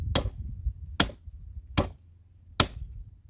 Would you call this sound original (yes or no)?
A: yes